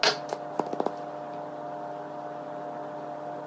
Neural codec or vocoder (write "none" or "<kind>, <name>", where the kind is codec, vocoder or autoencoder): none